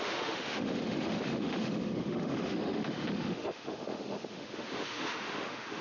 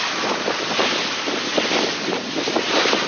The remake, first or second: first